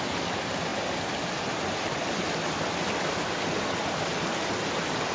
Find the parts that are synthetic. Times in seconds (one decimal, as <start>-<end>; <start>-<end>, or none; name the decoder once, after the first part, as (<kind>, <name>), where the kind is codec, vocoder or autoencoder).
none